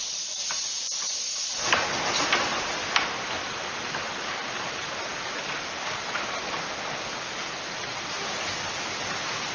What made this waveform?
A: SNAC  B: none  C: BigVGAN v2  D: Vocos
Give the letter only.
B